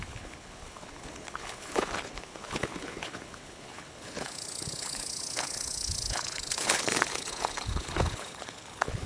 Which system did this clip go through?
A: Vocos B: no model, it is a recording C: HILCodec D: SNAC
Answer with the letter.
C